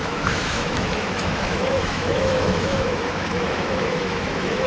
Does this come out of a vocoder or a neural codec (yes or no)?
yes